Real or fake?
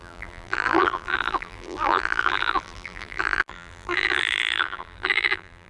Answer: fake